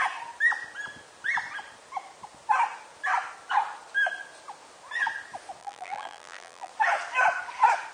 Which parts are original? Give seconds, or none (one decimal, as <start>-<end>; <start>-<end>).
0.0-5.6; 6.7-7.9